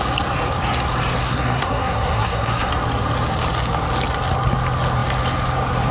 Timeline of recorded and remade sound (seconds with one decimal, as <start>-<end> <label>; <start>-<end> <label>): 0.0-1.2 recorded; 1.2-2.7 remade; 2.7-5.9 recorded